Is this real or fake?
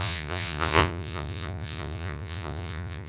fake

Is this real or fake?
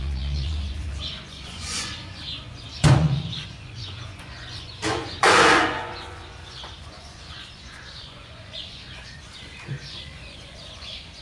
fake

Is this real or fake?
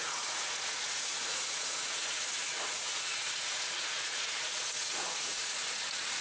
fake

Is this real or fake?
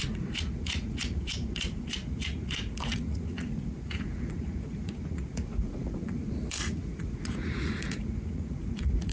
fake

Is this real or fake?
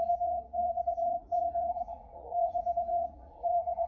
fake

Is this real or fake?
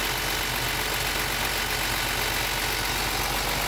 real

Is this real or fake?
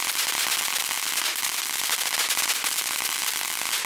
real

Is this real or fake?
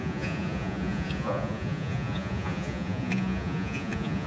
fake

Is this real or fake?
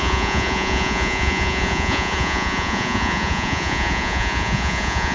fake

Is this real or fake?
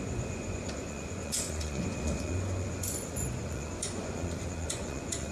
fake